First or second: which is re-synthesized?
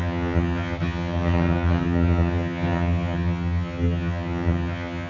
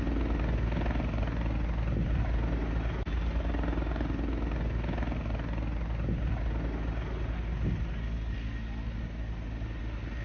first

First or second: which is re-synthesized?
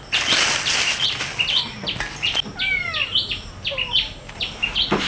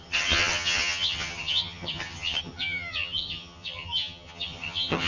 second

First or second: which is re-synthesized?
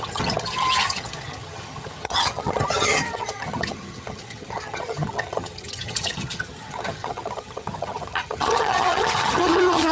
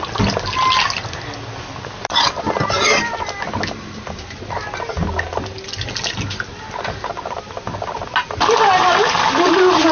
first